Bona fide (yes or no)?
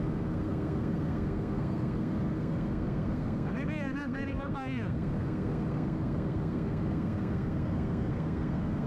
no